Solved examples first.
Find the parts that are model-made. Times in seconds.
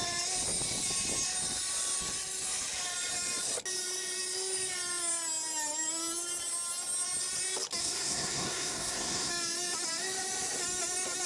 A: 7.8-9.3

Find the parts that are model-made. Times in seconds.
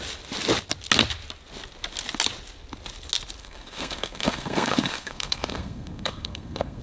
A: 3.4-6.8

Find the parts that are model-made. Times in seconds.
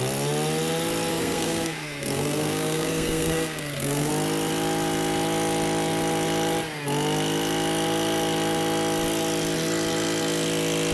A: 1.1-4.1